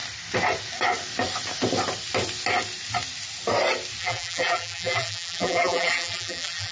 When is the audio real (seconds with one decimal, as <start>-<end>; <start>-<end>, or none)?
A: 0.0-4.0